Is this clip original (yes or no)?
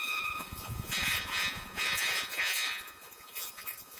no